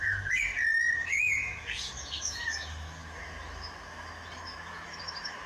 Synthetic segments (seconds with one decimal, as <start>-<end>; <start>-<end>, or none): 0.0-0.5; 1.0-5.5